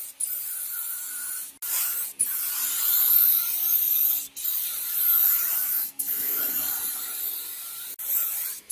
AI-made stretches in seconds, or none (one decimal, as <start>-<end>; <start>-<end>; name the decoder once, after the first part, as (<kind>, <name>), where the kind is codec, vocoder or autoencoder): 5.6-6.4 (codec, SNAC)